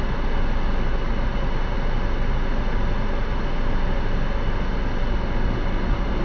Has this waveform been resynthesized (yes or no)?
no